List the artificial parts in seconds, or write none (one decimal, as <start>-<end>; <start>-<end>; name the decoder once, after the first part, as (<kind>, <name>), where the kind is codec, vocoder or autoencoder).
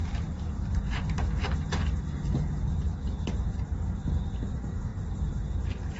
0.0-3.6 (vocoder, BigVGAN v2); 4.9-5.4